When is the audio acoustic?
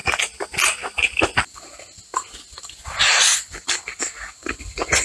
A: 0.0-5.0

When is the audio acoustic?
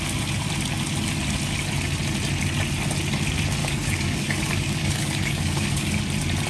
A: 0.0-3.6; 6.0-6.5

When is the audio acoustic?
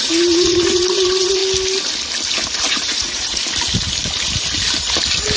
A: 1.4-2.7; 3.4-5.4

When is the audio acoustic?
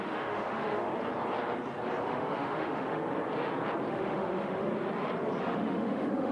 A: 0.9-2.0; 3.0-3.9; 4.7-5.4